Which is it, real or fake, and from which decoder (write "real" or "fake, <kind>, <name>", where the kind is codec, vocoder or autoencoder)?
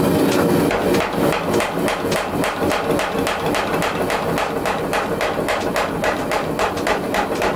real